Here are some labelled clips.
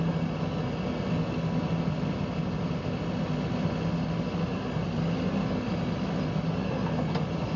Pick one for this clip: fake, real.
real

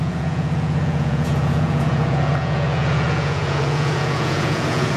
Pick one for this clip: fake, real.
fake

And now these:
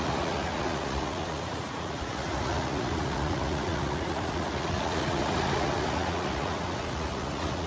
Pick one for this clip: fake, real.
fake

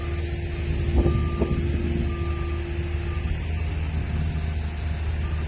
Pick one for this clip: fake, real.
real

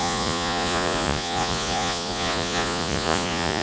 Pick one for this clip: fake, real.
fake